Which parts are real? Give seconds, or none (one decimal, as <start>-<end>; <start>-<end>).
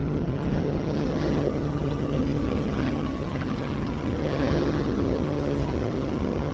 none